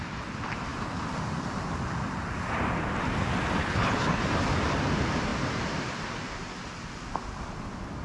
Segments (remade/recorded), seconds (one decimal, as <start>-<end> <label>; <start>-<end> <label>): 0.0-3.6 recorded; 3.6-4.2 remade; 4.2-8.0 recorded